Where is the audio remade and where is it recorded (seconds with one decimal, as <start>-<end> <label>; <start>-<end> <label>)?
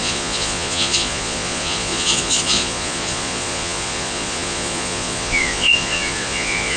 0.0-6.8 remade